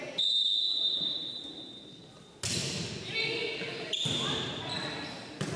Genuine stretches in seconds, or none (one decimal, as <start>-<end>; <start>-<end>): 0.0-5.6